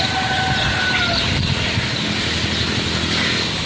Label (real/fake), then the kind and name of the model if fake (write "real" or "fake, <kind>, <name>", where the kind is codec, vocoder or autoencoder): real